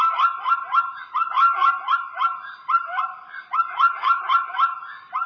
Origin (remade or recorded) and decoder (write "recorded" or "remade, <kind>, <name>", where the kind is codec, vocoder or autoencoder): recorded